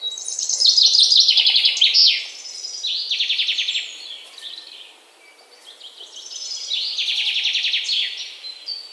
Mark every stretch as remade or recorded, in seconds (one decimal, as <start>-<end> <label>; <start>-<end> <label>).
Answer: 0.0-8.9 recorded